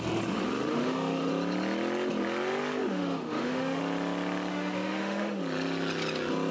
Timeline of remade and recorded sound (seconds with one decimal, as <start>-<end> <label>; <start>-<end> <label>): 0.0-0.7 recorded; 0.7-1.3 remade; 1.3-2.8 recorded; 2.8-3.8 remade; 3.8-4.5 recorded; 4.5-5.4 remade; 5.4-6.5 recorded